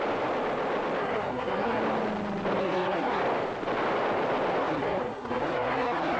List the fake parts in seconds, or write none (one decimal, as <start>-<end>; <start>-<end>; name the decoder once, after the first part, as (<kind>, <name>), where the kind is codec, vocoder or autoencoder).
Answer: 1.0-1.8 (codec, SNAC); 2.6-3.2; 4.6-6.2